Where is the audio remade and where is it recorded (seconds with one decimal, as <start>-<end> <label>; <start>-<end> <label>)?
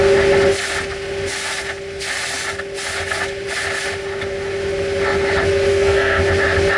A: 0.0-5.7 recorded; 5.7-6.2 remade; 6.2-6.8 recorded